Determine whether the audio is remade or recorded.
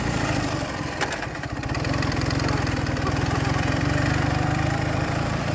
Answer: remade